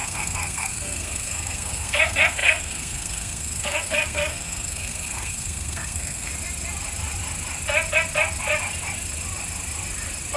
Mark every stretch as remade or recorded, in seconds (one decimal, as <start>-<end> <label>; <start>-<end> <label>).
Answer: 0.0-6.3 remade; 6.3-10.4 recorded